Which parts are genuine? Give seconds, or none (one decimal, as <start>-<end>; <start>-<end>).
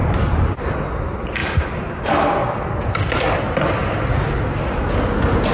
0.8-5.5